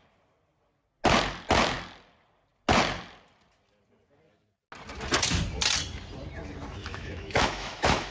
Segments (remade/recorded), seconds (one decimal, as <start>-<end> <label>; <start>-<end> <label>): 0.0-6.8 recorded; 6.8-8.1 remade